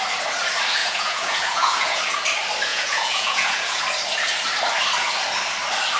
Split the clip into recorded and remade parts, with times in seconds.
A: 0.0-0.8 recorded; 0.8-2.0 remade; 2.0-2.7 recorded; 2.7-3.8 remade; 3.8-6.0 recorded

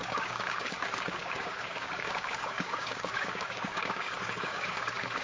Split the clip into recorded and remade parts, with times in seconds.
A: 0.0-5.2 remade

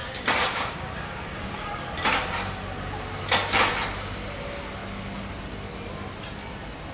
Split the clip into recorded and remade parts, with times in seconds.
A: 0.0-1.7 remade; 1.7-6.9 recorded

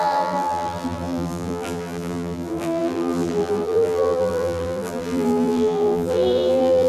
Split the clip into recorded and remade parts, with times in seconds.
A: 0.0-6.9 remade

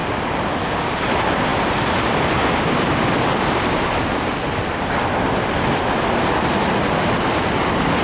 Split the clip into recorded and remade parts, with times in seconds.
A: 0.0-8.0 recorded